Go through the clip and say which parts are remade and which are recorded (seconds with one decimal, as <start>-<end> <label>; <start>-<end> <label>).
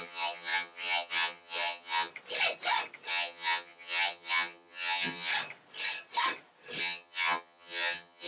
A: 0.0-2.1 remade; 2.1-3.1 recorded; 3.1-5.3 remade; 5.3-6.8 recorded; 6.8-8.3 remade